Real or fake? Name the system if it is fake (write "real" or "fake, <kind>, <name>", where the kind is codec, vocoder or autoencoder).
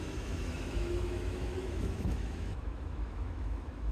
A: fake, autoencoder, DAC-VAE